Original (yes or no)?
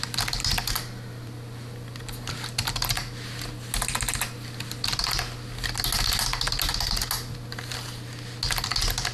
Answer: yes